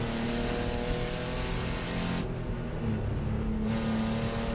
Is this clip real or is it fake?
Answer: real